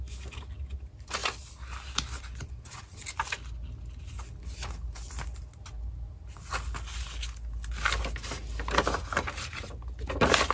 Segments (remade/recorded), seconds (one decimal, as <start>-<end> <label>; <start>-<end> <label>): 0.0-10.5 recorded